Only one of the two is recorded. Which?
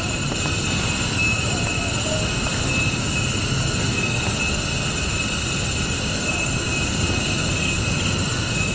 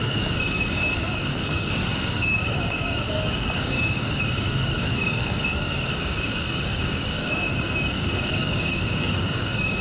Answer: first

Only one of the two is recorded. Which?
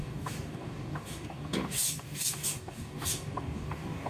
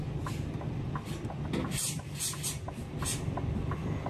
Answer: second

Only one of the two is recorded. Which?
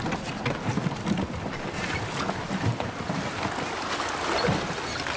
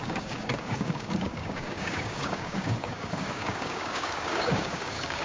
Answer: first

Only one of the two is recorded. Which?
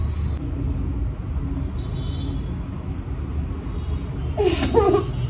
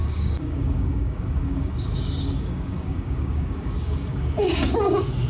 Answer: first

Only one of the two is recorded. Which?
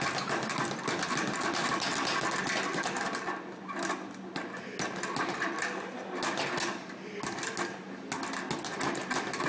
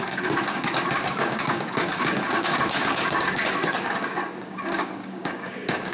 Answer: first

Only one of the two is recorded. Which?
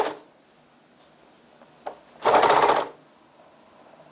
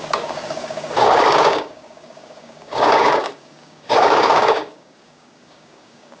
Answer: first